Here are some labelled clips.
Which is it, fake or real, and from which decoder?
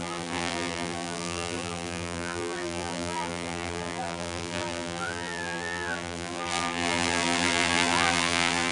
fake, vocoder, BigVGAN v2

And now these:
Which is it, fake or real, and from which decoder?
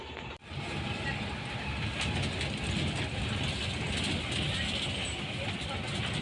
real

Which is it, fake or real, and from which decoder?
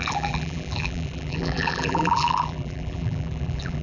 fake, vocoder, BigVGAN v2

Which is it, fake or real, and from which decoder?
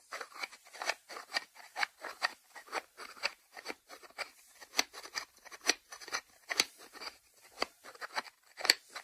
fake, vocoder, BigVGAN v2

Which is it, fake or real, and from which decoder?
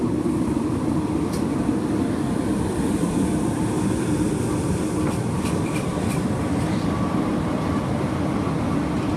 fake, vocoder, BigVGAN v2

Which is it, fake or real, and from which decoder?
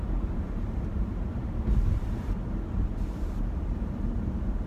fake, vocoder, BigVGAN v2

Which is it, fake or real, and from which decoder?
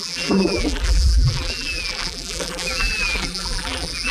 fake, vocoder, BigVGAN v2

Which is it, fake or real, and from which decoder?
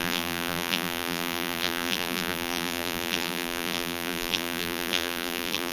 fake, vocoder, BigVGAN v2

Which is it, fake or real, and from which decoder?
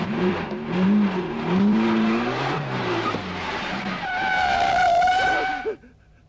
fake, vocoder, BigVGAN v2